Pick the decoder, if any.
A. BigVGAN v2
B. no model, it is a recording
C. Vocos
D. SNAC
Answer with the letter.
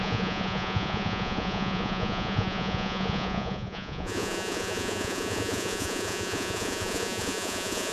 C